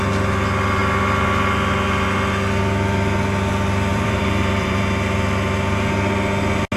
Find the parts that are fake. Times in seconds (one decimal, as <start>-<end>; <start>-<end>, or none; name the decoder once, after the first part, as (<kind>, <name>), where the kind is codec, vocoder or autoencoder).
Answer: 3.9-4.8 (vocoder, BigVGAN v2)